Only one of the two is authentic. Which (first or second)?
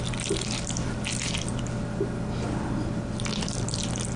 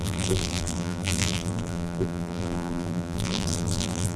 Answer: first